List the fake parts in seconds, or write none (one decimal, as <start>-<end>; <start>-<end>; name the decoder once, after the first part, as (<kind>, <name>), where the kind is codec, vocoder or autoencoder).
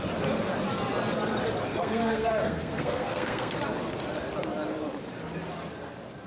1.7-3.6 (codec, SNAC)